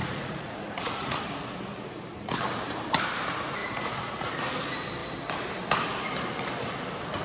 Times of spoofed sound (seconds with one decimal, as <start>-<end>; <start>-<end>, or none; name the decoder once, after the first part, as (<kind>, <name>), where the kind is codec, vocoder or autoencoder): 0.0-1.2 (vocoder, Vocos); 3.6-4.5